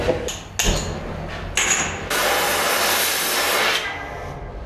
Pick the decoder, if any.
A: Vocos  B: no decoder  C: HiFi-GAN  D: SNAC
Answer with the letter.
B